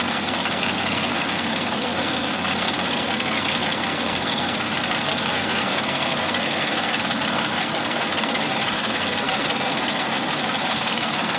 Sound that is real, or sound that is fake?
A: fake